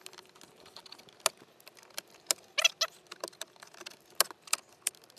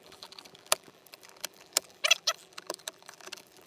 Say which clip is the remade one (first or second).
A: second